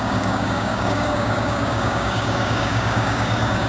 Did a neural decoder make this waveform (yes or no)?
yes